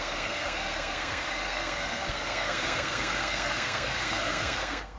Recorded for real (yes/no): no